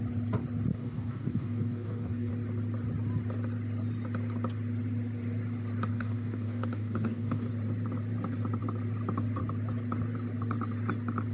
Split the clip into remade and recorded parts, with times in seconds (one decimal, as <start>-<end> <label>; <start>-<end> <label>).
0.0-0.7 recorded; 0.7-2.3 remade; 2.3-5.9 recorded; 5.9-7.5 remade; 7.5-11.3 recorded

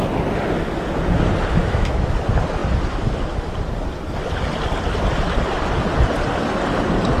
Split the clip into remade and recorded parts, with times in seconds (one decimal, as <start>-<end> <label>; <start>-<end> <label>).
0.0-1.6 recorded; 1.6-2.2 remade; 2.2-7.2 recorded

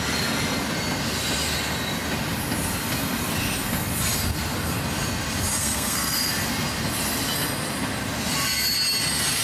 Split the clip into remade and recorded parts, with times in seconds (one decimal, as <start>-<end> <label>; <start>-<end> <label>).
0.0-5.5 recorded; 5.5-6.3 remade; 6.3-9.4 recorded

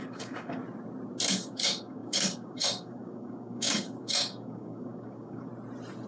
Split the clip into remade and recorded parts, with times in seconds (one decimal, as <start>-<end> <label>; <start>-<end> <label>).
0.0-0.6 remade; 0.6-1.3 recorded; 1.3-5.5 remade; 5.5-6.1 recorded

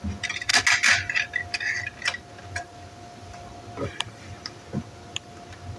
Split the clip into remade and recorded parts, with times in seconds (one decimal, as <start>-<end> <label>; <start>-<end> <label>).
0.0-5.8 recorded

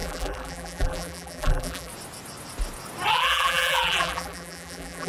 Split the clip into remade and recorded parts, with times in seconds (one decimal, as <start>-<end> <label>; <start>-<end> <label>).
0.0-1.9 remade; 1.9-3.1 recorded; 3.1-5.1 remade

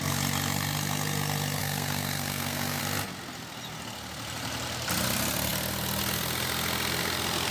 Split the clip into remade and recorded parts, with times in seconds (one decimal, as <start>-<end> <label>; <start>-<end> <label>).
0.0-1.6 recorded; 1.6-2.8 remade; 2.8-7.5 recorded